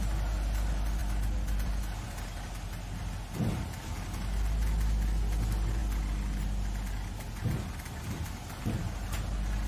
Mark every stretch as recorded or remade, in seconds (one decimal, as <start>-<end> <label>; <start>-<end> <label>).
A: 0.0-1.0 recorded; 1.0-1.8 remade; 1.8-9.7 recorded